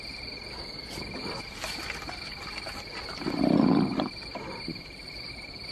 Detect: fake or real real